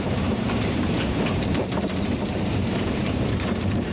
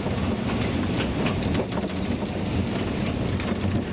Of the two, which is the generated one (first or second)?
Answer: first